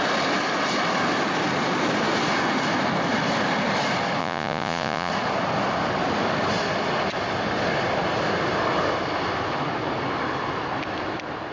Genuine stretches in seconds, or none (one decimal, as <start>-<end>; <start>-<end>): 0.0-4.2; 5.1-11.5